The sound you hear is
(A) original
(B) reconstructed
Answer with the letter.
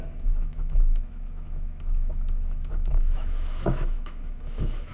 B